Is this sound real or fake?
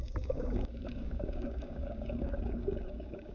fake